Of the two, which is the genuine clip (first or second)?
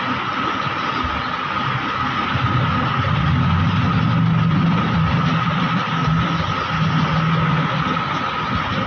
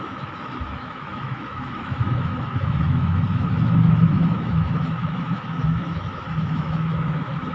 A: first